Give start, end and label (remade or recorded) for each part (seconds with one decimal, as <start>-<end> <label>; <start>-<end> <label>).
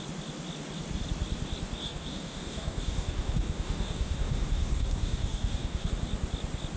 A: 0.0-1.8 recorded; 1.8-5.9 remade; 5.9-6.8 recorded